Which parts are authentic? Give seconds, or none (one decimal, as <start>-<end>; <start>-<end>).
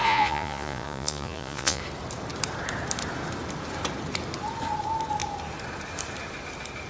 1.8-6.9